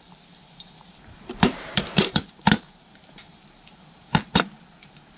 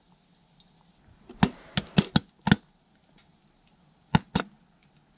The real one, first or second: second